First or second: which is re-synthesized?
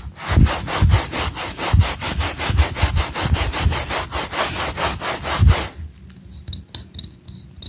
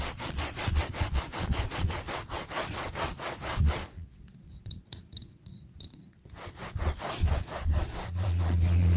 second